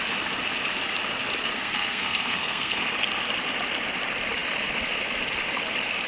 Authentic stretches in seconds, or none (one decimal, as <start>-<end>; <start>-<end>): 0.0-1.5; 2.8-6.1